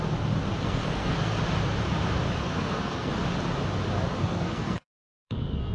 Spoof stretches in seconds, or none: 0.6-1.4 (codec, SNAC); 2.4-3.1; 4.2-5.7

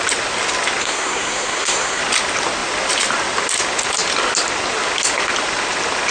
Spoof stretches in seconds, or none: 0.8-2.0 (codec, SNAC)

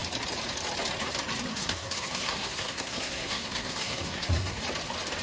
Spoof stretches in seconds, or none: 1.5-4.6 (codec, SNAC)

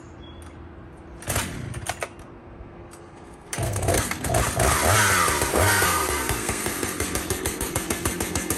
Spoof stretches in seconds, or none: 2.4-4.3 (codec, SNAC); 5.5-8.6

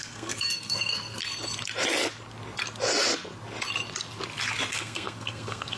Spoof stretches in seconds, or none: 0.0-1.2 (codec, SNAC); 4.7-5.8

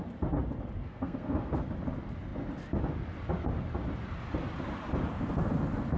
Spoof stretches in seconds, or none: 0.8-1.7 (codec, SNAC)

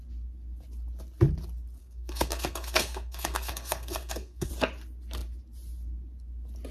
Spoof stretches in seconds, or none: 1.8-4.5 (codec, SNAC)